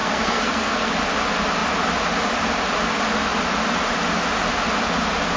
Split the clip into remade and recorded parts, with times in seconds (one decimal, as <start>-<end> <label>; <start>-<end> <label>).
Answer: 0.0-0.9 remade; 0.9-5.4 recorded